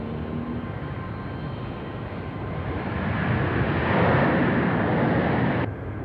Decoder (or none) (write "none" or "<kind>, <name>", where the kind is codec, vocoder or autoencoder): none